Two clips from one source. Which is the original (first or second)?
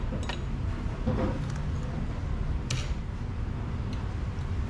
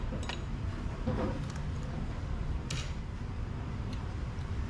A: first